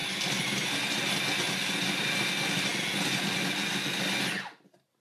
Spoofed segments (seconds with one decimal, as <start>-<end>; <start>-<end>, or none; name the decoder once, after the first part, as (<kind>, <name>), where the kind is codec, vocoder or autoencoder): none